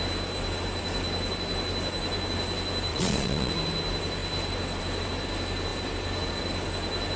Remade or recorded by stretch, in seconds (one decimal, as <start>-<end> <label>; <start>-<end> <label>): 0.0-2.9 recorded; 2.9-3.5 remade; 3.5-7.2 recorded